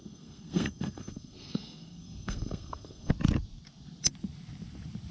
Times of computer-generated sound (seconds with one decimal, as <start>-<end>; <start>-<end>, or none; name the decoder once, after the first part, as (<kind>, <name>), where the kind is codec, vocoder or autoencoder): 0.0-3.1 (codec, SNAC)